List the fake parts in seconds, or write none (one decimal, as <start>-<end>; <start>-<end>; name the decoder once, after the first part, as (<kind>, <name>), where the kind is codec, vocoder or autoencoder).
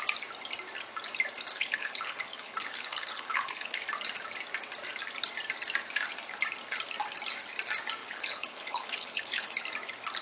1.5-3.8 (codec, HILCodec); 8.0-9.6